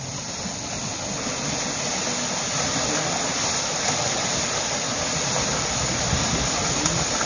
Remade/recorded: recorded